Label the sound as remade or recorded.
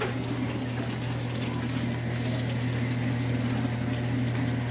recorded